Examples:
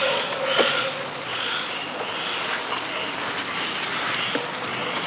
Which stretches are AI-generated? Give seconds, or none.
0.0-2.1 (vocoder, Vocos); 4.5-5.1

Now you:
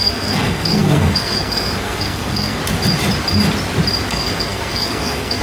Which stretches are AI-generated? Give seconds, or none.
0.0-2.6 (codec, SNAC); 4.1-5.4